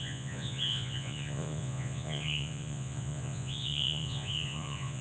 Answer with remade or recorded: remade